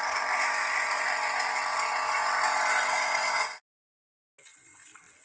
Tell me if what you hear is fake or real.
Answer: real